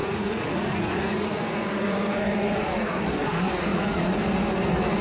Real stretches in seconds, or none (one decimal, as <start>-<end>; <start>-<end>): 3.0-3.7; 4.2-5.0